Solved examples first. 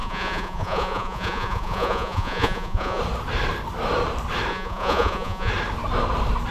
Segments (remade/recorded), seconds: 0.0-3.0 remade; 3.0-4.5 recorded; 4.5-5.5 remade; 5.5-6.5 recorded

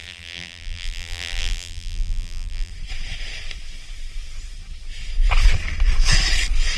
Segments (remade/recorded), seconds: 0.0-2.7 remade; 2.7-6.8 recorded